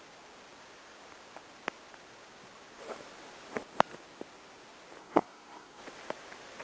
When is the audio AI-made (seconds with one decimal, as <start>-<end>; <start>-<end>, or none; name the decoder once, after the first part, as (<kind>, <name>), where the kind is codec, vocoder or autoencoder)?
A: 5.0-5.8 (codec, SNAC)